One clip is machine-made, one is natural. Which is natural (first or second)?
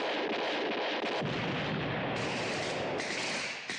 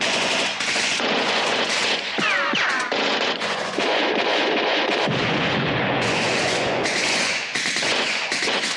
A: first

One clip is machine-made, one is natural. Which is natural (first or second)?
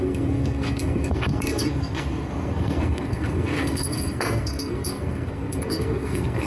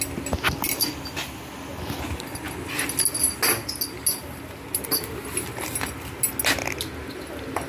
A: second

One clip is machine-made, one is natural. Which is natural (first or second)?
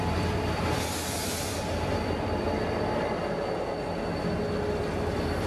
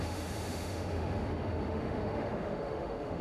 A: first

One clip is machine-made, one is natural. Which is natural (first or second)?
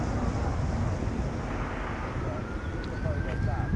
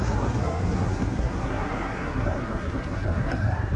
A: first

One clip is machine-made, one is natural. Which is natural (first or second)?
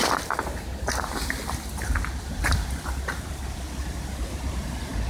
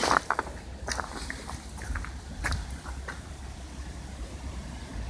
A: second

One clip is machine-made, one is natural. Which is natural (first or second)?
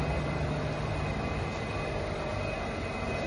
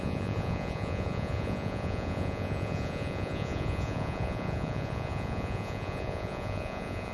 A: first